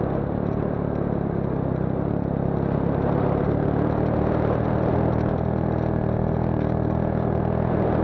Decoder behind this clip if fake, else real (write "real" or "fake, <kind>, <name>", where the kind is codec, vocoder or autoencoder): real